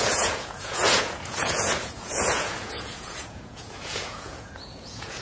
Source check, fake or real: fake